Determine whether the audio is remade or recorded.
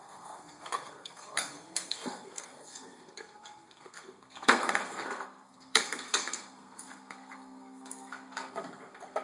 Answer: remade